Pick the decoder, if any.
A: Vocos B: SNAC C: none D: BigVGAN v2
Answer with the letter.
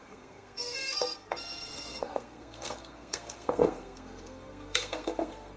B